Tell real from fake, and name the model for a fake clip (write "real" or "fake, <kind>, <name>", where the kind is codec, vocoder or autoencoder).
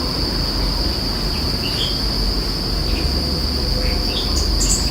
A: real